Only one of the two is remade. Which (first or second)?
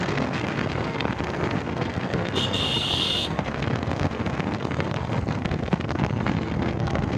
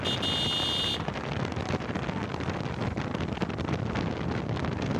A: first